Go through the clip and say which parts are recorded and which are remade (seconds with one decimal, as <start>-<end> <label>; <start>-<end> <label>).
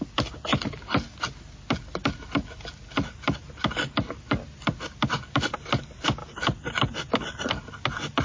0.0-8.2 recorded